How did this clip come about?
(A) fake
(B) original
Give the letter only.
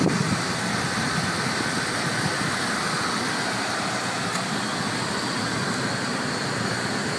B